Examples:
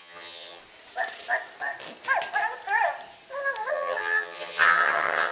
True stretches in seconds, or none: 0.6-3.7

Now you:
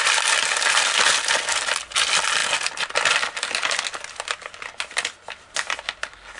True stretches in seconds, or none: 0.0-6.4

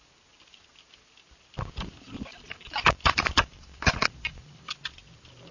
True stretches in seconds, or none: 0.0-2.3; 4.7-5.5

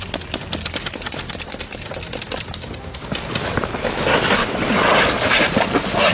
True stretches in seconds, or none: 0.0-4.4; 5.0-6.1

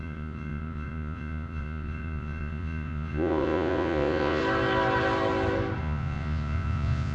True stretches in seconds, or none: 4.4-5.8